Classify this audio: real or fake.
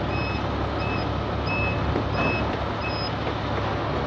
real